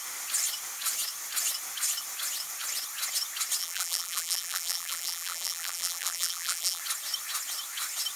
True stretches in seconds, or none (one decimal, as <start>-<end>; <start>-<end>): 0.0-3.6; 6.8-8.2